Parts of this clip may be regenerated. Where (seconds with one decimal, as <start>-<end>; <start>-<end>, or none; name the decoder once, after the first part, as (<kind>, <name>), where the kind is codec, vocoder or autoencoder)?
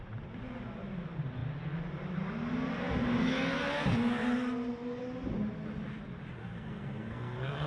6.4-7.7 (codec, SNAC)